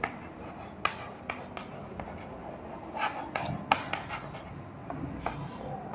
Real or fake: real